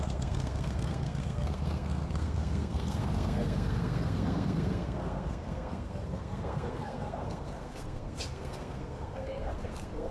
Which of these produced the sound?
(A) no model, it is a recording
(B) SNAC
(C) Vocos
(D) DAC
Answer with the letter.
B